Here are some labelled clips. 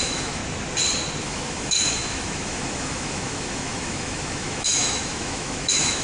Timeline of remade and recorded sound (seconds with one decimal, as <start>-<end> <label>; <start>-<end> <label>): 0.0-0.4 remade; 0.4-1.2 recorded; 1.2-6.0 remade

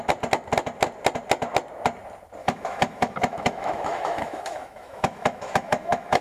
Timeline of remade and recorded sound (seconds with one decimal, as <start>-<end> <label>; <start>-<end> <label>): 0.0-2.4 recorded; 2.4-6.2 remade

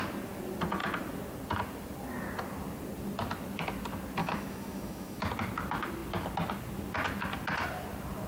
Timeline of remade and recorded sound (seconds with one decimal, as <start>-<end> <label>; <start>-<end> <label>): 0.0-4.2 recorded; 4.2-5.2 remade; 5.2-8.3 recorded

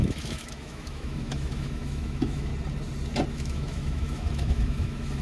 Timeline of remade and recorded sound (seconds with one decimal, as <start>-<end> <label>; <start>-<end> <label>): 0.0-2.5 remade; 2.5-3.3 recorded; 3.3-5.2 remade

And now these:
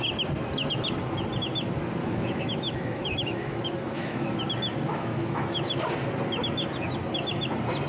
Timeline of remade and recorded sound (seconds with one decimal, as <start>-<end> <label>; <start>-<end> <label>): 0.0-2.0 recorded; 2.0-4.4 remade; 4.4-4.9 recorded; 4.9-5.7 remade; 5.7-7.9 recorded

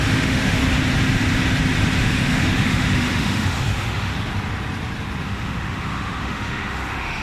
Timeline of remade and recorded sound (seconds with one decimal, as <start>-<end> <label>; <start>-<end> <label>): 0.0-0.6 remade; 0.6-2.0 recorded; 2.0-4.1 remade; 4.1-5.2 recorded; 5.2-7.2 remade